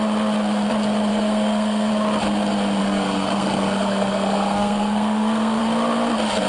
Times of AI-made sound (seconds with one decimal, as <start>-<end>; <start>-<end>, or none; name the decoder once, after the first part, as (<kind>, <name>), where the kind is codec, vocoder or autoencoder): 1.1-1.9 (codec, SNAC); 2.8-5.6